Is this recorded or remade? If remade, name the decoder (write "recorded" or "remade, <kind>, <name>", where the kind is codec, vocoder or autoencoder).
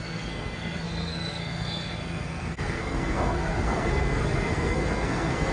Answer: remade, codec, SNAC